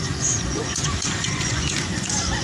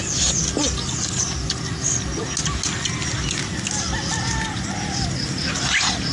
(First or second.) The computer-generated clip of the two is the first